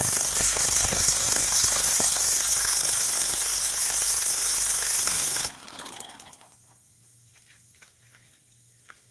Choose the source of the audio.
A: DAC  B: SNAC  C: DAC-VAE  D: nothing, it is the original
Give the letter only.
B